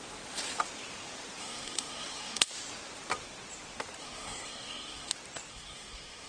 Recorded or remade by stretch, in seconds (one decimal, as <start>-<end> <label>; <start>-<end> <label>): 0.0-1.4 recorded; 1.4-2.5 remade; 2.5-4.0 recorded; 4.0-5.1 remade; 5.1-5.5 recorded; 5.5-6.3 remade